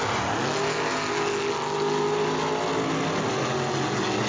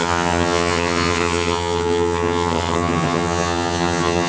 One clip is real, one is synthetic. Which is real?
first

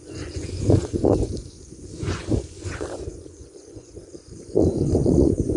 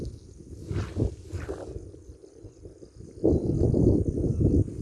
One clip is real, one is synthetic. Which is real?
second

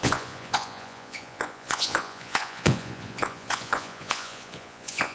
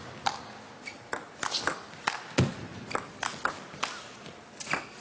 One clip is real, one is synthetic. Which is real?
second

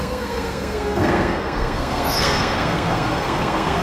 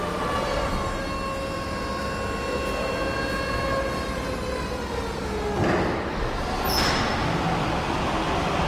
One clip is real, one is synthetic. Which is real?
second